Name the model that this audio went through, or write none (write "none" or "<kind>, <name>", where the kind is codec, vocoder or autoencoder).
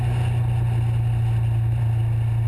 none